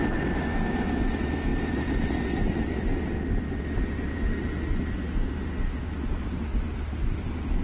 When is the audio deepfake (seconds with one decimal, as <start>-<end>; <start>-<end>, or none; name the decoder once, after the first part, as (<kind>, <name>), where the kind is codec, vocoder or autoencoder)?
none